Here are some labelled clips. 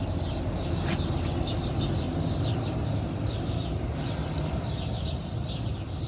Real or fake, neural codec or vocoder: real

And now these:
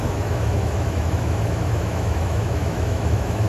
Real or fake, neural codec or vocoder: fake, autoencoder, DAC-VAE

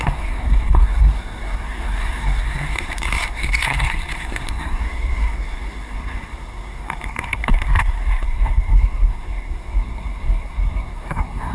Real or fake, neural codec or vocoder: fake, codec, SNAC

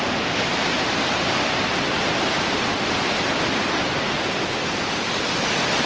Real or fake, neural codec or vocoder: real